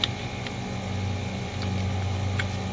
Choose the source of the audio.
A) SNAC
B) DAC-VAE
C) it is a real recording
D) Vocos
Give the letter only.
C